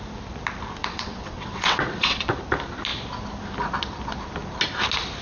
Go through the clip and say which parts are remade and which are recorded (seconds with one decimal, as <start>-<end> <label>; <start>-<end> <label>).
0.0-0.8 recorded; 0.8-2.4 remade; 2.4-5.2 recorded